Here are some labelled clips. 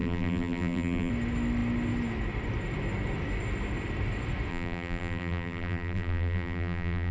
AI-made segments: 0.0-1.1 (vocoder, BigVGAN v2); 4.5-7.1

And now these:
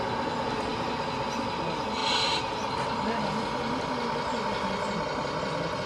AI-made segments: 2.0-2.7 (vocoder, BigVGAN v2)

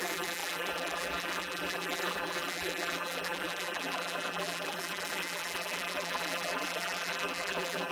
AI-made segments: 0.0-7.9 (vocoder, BigVGAN v2)

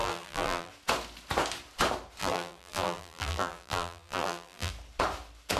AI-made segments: 0.0-0.7 (vocoder, BigVGAN v2); 2.2-4.7

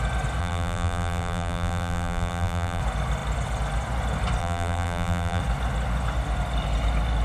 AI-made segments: 0.4-2.8 (vocoder, BigVGAN v2); 4.4-5.4